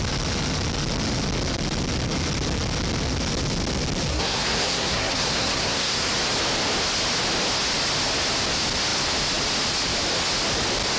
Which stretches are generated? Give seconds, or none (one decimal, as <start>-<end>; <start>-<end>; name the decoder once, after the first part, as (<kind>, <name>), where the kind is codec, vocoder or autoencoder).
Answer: 4.1-6.1 (codec, SNAC)